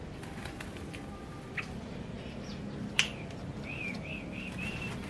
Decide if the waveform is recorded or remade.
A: recorded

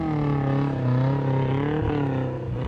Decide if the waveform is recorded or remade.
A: recorded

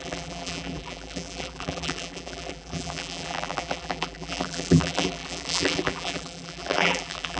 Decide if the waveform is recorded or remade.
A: remade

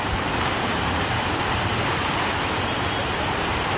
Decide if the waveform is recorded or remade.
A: recorded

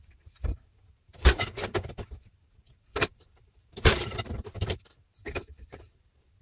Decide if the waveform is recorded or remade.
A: remade